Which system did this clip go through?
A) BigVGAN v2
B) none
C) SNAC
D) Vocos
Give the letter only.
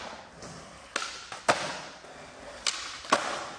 B